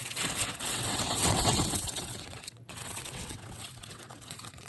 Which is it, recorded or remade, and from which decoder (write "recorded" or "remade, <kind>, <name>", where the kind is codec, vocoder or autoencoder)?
remade, vocoder, WaveNeXt